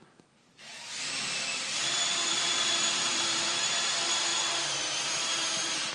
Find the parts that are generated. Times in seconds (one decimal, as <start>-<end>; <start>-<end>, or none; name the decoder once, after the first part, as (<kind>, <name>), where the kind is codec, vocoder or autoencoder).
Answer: 1.0-3.6 (vocoder, BigVGAN v2); 4.3-5.9